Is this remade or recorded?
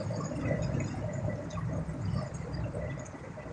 recorded